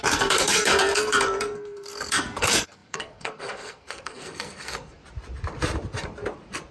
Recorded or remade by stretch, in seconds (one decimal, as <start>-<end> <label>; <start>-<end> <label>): 0.0-5.0 remade; 5.0-6.7 recorded